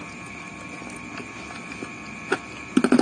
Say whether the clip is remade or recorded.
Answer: recorded